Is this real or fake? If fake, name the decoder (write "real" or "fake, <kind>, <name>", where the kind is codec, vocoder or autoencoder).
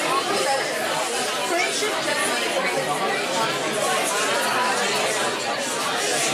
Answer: real